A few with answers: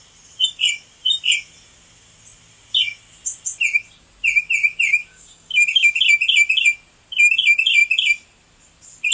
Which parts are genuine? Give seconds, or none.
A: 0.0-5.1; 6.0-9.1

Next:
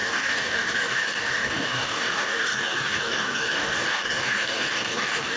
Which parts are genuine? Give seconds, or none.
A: none

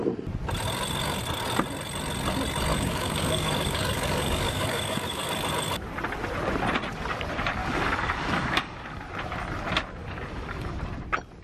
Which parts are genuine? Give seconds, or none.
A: 0.0-2.7; 5.3-7.6; 9.0-10.0; 10.8-11.4

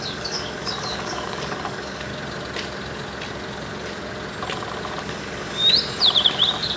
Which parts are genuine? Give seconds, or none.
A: 2.1-5.0; 5.6-6.8